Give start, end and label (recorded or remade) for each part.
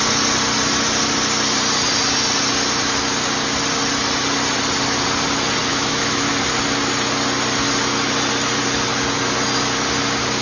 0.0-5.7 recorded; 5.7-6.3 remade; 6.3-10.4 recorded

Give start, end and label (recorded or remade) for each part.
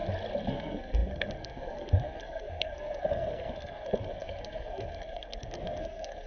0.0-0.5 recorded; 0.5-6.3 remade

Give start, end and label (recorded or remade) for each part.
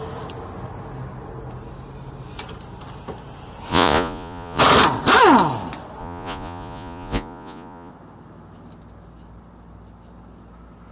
0.0-3.7 recorded; 3.7-4.6 remade; 4.6-6.0 recorded; 6.0-7.9 remade; 7.9-10.9 recorded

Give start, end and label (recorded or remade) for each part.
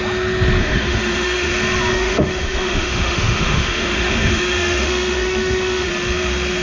0.0-0.6 recorded; 0.6-1.5 remade; 1.5-1.9 recorded; 1.9-5.9 remade; 5.9-6.6 recorded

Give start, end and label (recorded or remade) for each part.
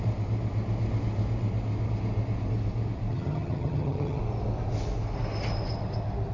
0.0-3.1 recorded; 3.1-4.2 remade; 4.2-6.3 recorded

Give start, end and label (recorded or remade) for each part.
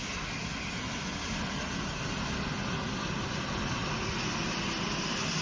0.0-5.4 recorded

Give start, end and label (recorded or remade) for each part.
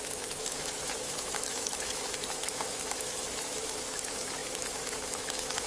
0.0-5.7 remade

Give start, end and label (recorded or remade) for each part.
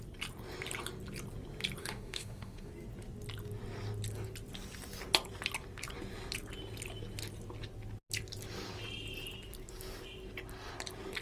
0.0-1.8 recorded; 1.8-2.7 remade; 2.7-11.2 recorded